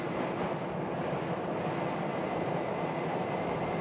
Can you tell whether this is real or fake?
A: real